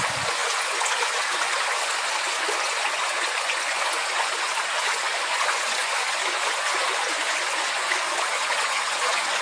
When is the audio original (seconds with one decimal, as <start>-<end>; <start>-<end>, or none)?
none